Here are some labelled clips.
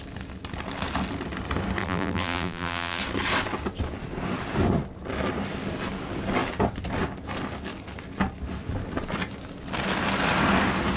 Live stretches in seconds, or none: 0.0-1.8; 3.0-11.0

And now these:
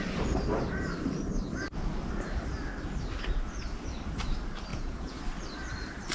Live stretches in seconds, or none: 0.0-4.7; 5.2-6.1

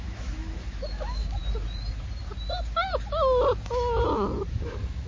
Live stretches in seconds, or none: 1.4-4.5